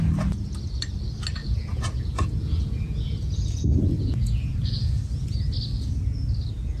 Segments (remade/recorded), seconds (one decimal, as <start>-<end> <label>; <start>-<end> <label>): 0.0-1.4 recorded; 1.4-5.0 remade; 5.0-6.8 recorded